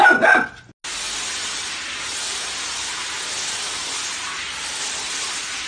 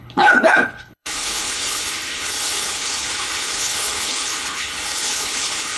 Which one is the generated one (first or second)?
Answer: second